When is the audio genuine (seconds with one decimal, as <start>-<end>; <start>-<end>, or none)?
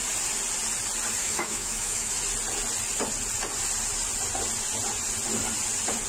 0.0-1.2; 2.1-6.1